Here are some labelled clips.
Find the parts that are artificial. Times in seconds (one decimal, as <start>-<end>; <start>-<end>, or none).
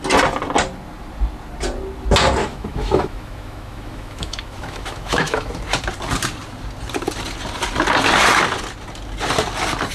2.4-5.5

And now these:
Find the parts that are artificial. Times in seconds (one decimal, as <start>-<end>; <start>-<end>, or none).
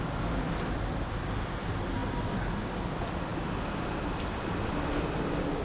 none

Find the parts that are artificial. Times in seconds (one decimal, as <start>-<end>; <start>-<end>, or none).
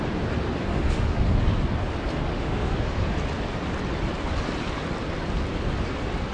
0.7-1.3; 2.3-3.1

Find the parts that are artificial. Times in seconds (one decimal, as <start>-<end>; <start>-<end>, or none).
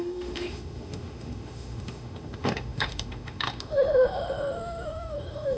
0.0-5.6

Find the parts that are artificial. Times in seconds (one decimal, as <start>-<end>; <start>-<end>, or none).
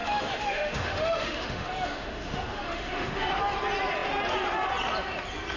0.0-3.4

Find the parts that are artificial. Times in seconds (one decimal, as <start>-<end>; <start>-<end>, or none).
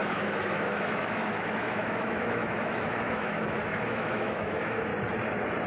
0.0-4.9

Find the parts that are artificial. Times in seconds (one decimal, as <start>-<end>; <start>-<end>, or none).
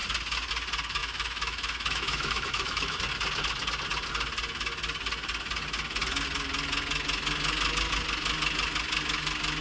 1.0-3.0